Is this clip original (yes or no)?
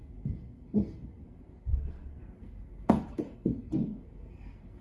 no